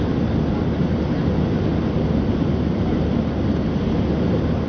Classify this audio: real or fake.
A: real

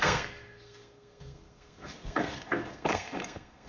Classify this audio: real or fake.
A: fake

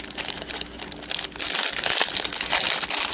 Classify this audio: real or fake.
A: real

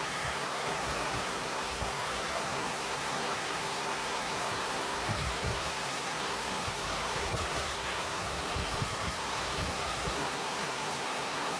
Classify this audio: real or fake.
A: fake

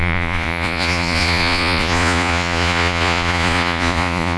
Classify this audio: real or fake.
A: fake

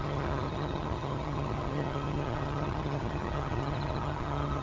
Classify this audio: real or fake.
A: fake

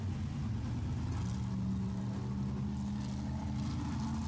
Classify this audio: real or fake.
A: real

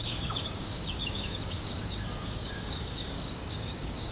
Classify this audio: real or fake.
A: fake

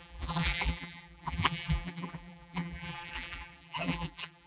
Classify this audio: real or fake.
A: fake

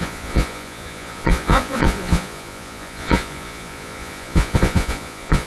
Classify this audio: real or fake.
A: fake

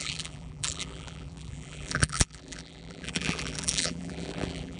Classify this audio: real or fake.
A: fake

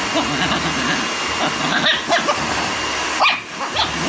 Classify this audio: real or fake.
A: real